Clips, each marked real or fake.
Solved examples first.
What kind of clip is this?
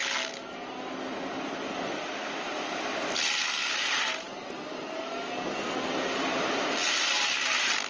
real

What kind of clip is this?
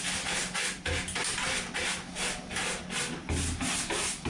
real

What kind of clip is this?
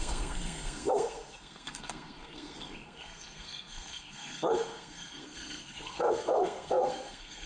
fake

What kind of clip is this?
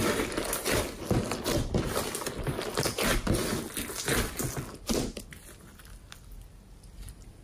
real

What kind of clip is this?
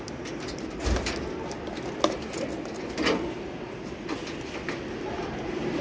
real